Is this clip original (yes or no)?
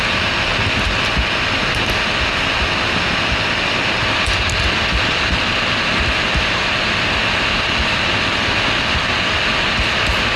yes